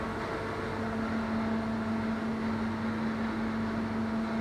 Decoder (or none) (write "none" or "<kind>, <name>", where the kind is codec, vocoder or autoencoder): none